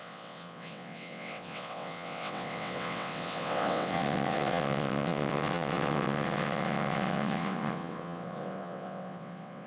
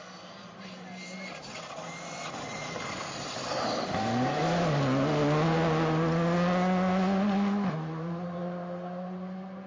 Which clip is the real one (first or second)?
second